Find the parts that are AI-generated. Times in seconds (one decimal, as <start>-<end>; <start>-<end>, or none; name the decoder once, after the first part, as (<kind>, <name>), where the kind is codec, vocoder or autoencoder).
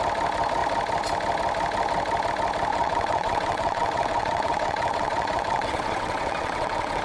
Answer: 2.7-7.0 (vocoder, WaveNeXt)